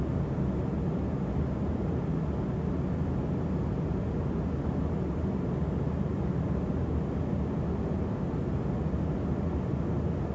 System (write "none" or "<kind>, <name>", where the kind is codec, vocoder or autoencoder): none